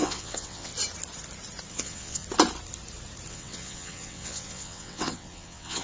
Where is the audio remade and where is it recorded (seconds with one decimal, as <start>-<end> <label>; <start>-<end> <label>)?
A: 0.0-0.7 remade; 0.7-1.7 recorded; 1.7-2.2 remade; 2.2-3.3 recorded; 3.3-5.8 remade